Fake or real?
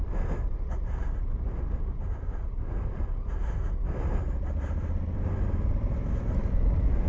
fake